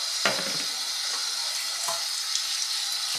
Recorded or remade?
recorded